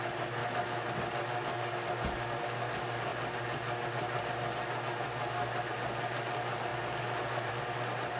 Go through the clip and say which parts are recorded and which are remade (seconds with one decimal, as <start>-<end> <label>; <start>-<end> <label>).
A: 0.0-0.4 recorded; 0.4-0.9 remade; 0.9-8.2 recorded